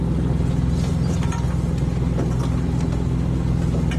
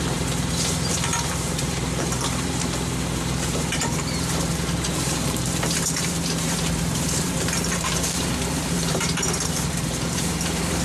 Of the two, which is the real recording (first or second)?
first